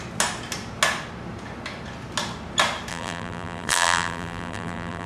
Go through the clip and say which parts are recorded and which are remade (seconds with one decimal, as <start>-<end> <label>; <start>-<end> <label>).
0.0-2.9 recorded; 2.9-5.1 remade